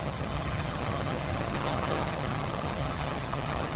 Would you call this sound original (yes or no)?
no